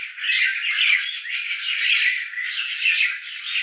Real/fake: real